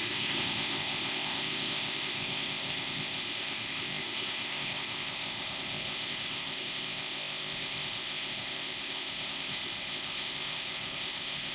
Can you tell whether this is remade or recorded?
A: remade